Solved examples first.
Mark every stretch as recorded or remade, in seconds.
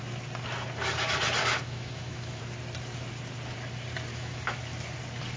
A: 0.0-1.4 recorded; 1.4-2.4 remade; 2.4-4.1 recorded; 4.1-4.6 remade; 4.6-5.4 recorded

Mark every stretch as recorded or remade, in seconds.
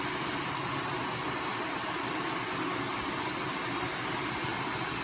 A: 0.0-5.0 recorded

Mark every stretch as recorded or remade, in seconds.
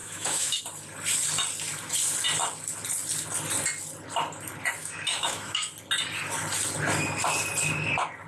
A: 0.0-0.6 remade; 0.6-4.8 recorded; 4.8-5.7 remade; 5.7-8.3 recorded